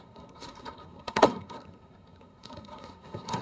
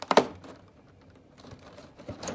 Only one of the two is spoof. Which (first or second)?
first